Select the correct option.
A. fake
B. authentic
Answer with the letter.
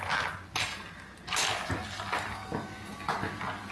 B